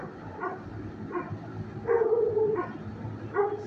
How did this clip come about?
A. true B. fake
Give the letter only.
A